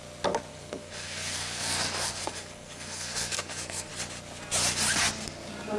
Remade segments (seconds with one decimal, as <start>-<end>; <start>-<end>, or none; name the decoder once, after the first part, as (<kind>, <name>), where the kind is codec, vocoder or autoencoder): 0.5-3.9 (codec, SNAC)